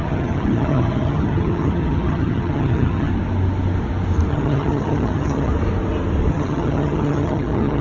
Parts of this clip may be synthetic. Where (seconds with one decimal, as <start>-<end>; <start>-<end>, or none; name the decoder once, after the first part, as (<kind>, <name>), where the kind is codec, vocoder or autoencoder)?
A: 0.0-3.1 (vocoder, HiFi-GAN); 4.3-5.5; 6.3-7.8